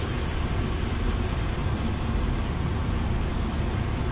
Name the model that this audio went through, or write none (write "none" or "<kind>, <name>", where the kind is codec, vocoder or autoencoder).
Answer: none